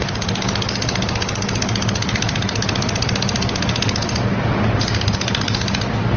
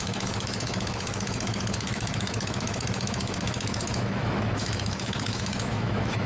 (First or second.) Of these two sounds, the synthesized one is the second